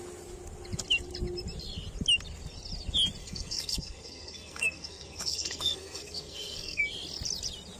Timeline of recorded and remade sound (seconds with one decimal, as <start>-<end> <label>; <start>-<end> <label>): 0.0-3.2 recorded; 3.2-6.8 remade; 6.8-7.8 recorded